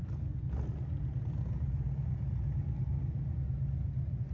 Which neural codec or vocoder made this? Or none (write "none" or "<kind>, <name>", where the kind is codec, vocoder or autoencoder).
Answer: none